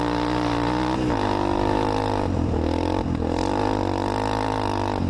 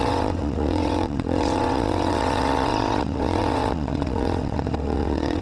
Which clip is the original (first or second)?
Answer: first